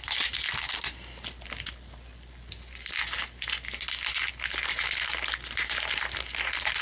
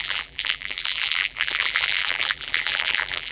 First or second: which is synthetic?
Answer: second